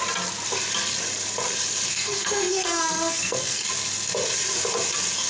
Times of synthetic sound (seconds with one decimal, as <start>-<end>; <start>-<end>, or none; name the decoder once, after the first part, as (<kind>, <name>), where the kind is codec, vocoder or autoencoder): 1.9-3.7 (codec, SNAC)